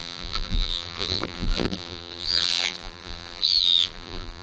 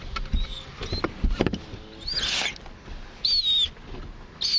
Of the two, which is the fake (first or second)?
first